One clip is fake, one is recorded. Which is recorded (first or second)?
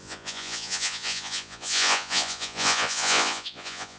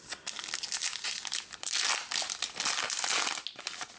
second